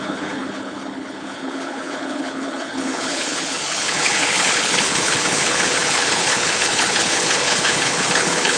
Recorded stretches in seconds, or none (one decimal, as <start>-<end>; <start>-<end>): none

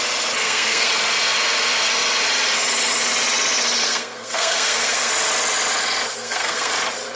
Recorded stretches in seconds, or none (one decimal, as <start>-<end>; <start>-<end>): 0.0-0.4; 0.9-3.8; 5.1-6.1; 6.7-7.2

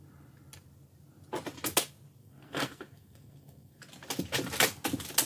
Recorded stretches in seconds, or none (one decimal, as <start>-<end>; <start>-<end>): 0.0-2.2; 3.8-5.3

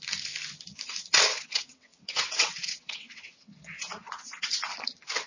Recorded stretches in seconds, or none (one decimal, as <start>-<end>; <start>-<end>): 0.0-1.3; 4.5-5.3